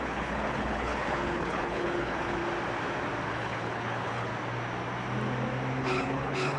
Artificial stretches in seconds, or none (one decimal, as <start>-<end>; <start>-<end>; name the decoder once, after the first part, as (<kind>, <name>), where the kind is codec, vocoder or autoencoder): 0.0-2.4 (codec, HILCodec); 3.3-4.3; 5.8-6.6